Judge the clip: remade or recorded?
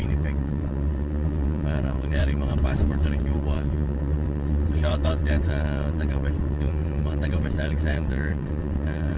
remade